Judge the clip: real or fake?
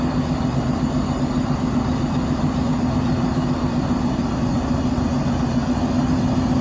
real